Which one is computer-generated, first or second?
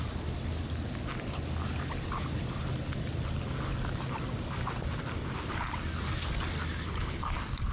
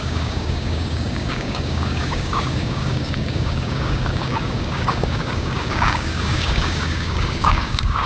second